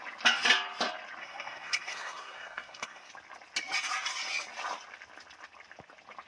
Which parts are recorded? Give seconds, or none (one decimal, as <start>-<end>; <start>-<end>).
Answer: 0.0-1.2; 3.1-6.3